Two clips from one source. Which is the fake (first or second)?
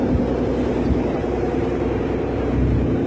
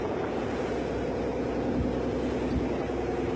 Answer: first